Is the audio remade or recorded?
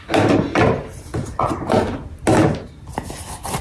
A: recorded